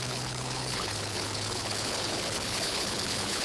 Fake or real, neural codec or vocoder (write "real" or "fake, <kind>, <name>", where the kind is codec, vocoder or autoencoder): fake, codec, HILCodec